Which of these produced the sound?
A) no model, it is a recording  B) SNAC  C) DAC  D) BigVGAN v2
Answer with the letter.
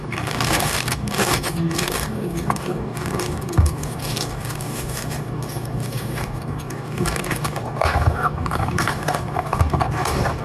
C